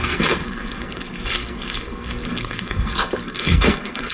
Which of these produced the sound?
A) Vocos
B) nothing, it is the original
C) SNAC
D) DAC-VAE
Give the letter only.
C